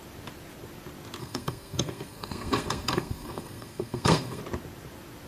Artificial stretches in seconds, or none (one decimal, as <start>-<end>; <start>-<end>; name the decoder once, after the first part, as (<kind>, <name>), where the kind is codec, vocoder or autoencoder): 1.2-4.4 (codec, SNAC)